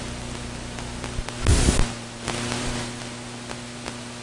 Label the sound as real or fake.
real